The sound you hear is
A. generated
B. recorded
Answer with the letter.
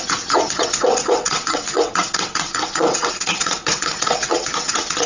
A